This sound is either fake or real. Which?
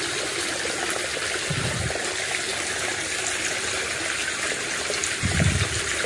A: real